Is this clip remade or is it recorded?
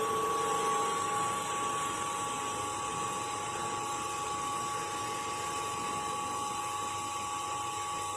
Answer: recorded